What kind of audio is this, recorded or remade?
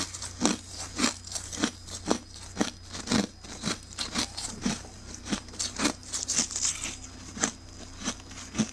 recorded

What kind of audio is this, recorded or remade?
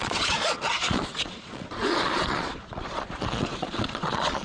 remade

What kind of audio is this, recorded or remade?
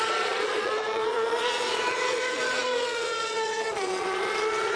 remade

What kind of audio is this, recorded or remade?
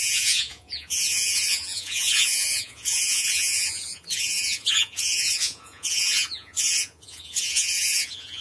remade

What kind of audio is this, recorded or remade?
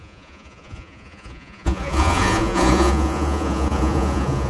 remade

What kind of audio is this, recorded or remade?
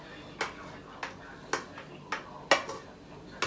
recorded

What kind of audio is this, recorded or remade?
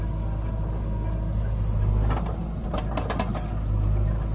recorded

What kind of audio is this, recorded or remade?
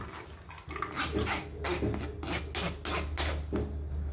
recorded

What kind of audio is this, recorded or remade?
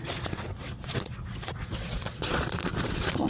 remade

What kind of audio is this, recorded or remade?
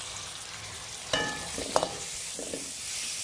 recorded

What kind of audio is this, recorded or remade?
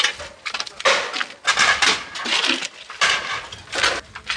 recorded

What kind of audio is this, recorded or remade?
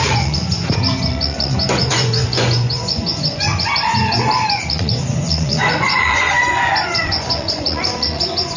remade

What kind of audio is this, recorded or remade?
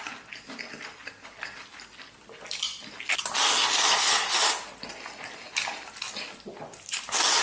recorded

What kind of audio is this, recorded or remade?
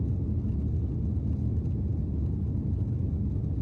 recorded